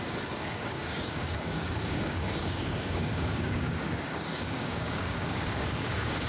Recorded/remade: remade